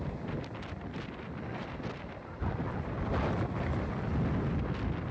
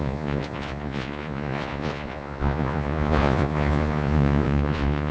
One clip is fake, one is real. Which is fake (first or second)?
second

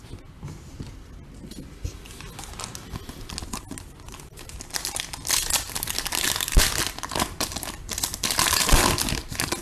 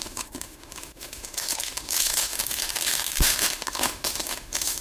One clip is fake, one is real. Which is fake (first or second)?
second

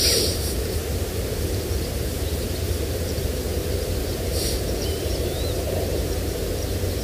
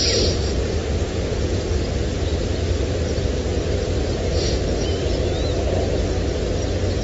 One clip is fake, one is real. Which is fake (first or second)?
first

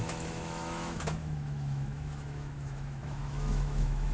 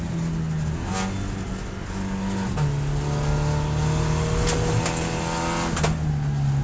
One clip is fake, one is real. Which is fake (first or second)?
first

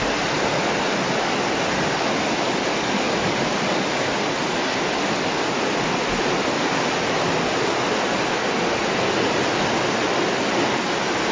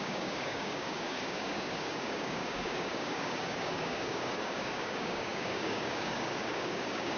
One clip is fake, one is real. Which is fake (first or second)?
second